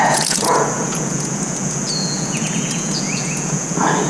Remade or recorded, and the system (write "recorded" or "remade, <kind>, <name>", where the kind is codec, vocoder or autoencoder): remade, vocoder, Vocos